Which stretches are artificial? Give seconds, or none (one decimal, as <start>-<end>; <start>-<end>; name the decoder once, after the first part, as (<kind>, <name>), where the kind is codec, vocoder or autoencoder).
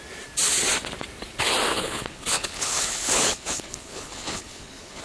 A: 1.7-5.0 (codec, HILCodec)